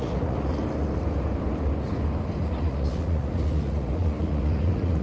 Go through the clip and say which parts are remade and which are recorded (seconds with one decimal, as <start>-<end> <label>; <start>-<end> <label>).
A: 0.0-0.6 remade; 0.6-2.4 recorded; 2.4-5.0 remade